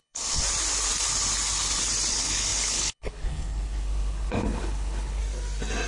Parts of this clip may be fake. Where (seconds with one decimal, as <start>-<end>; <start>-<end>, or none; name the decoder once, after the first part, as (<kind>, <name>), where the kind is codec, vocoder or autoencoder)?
0.0-0.4 (codec, HILCodec); 2.1-5.2